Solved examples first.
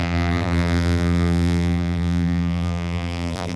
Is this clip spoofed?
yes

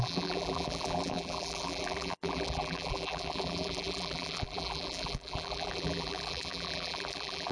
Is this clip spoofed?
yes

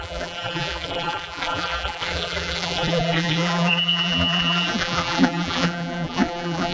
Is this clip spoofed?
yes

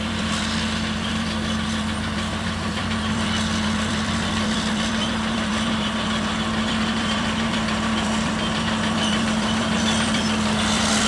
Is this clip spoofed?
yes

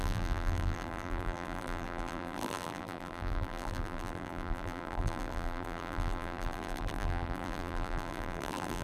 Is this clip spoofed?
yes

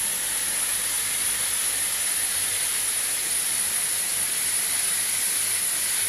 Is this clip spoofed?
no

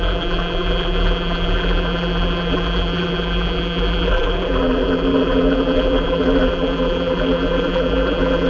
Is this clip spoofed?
yes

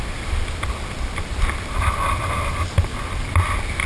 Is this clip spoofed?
no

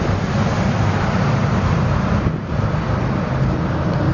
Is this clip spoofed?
yes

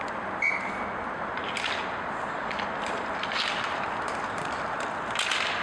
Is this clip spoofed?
no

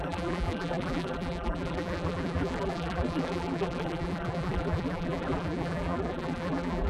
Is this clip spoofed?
yes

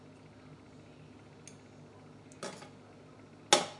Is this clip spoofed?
no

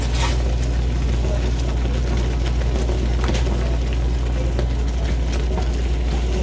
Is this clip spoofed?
no